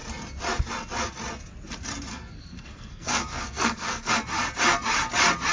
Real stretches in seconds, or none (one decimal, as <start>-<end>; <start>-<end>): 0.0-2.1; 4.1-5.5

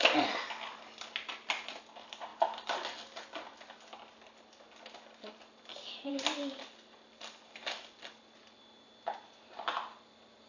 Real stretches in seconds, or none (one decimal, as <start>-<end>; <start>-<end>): 0.0-10.5

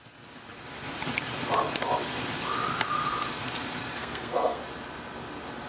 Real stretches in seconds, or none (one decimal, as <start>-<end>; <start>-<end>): 0.0-4.0; 4.6-5.7

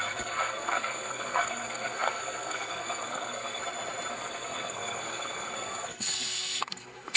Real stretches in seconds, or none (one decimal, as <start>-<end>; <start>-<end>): 3.6-4.1